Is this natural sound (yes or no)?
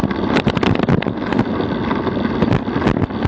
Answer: yes